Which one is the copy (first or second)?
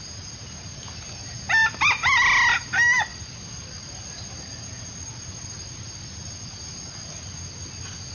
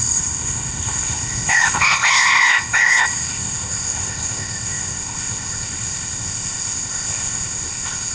second